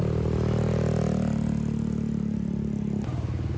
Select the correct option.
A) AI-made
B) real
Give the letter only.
B